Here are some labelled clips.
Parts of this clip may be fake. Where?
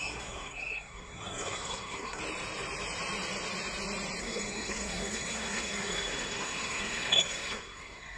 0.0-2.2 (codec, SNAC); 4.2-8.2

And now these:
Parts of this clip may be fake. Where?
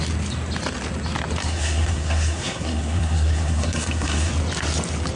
1.4-4.3 (codec, SNAC)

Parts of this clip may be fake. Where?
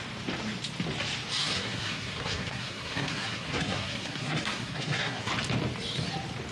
1.4-5.3 (codec, SNAC)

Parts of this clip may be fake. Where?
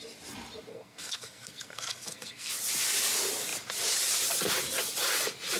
0.7-2.5 (codec, SNAC)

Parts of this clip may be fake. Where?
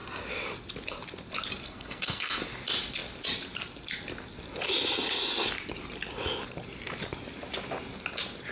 1.6-2.4 (codec, SNAC)